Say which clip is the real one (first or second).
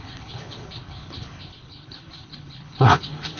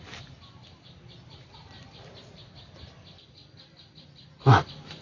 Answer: second